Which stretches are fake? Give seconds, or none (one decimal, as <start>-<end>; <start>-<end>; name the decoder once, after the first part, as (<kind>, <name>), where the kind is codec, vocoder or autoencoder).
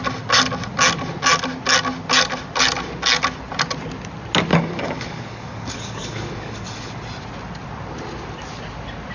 4.5-6.9 (codec, DAC)